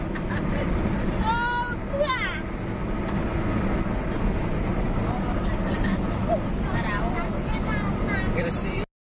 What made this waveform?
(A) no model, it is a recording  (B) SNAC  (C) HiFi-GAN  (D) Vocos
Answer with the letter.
A